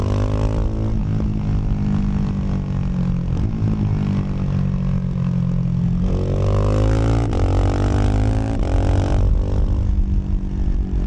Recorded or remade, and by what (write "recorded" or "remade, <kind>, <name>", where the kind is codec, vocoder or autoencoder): recorded